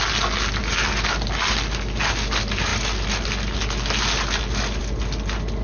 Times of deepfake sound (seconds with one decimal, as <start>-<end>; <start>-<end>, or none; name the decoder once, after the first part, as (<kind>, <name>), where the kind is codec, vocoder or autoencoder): none